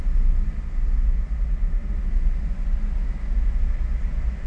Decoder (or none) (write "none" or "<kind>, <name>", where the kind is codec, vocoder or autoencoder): none